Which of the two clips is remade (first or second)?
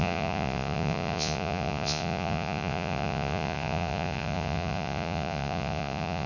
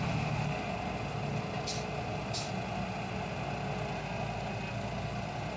first